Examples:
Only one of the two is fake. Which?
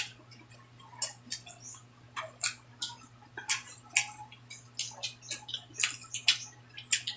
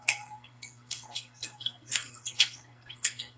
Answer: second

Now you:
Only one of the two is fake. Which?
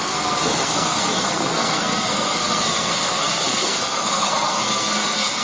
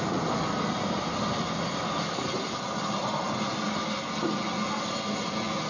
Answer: first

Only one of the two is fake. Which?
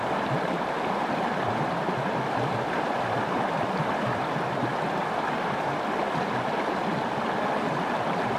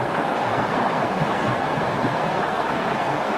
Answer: second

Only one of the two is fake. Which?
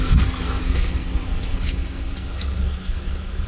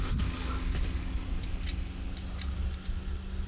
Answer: first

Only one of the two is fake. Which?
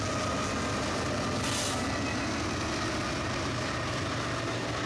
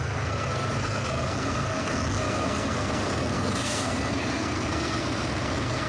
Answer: second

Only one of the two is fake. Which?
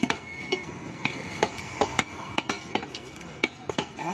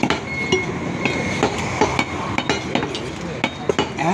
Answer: first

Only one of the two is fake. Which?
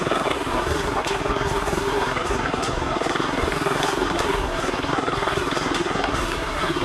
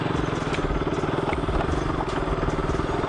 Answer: first